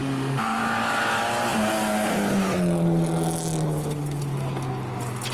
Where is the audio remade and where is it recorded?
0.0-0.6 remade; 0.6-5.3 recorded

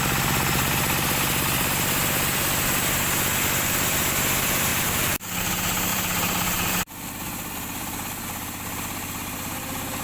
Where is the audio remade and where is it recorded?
0.0-4.7 recorded; 4.7-5.4 remade; 5.4-5.9 recorded; 5.9-6.7 remade; 6.7-10.0 recorded

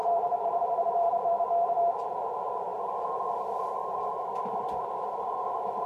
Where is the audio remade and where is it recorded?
0.0-1.3 remade; 1.3-5.9 recorded

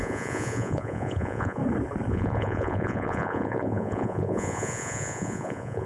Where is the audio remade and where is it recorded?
0.0-1.6 remade; 1.6-2.1 recorded; 2.1-5.9 remade